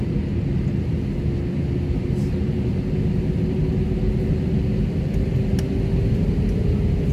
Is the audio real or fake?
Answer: real